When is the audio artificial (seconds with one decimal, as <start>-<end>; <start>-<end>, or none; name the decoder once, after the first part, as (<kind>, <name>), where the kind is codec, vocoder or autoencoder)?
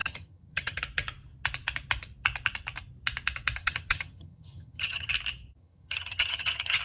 0.0-0.8 (vocoder, HiFi-GAN); 3.6-5.1; 5.6-6.8